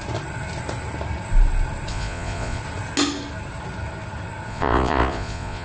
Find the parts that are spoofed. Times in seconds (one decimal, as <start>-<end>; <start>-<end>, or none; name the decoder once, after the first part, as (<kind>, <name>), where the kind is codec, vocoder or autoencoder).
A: 1.9-2.6 (vocoder, Vocos); 4.5-5.6